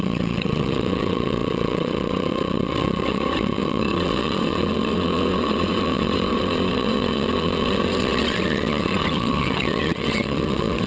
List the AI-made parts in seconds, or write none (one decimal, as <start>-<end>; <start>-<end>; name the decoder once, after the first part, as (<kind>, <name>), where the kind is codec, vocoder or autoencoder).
0.0-10.9 (vocoder, WaveNeXt)